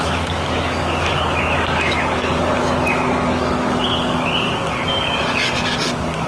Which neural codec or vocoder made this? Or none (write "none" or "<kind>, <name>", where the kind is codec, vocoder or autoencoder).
codec, DAC